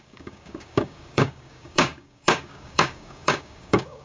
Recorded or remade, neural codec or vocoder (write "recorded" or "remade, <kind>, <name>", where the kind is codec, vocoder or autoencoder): remade, codec, DAC